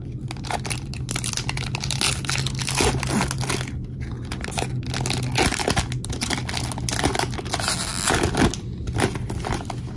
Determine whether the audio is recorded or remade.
recorded